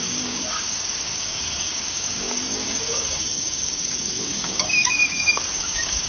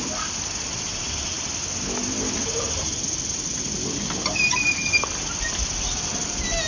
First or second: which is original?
second